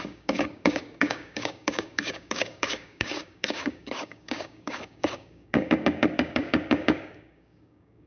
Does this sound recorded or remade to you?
remade